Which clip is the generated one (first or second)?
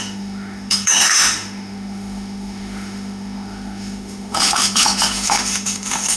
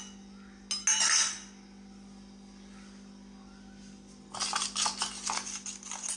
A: first